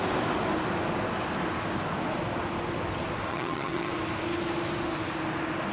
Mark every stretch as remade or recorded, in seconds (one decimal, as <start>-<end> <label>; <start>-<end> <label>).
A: 0.0-3.3 recorded; 3.3-3.9 remade; 3.9-5.7 recorded